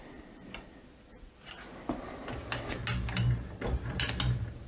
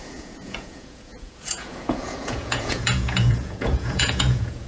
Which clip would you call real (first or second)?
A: first